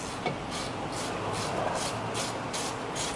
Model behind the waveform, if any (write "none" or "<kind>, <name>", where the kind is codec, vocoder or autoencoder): none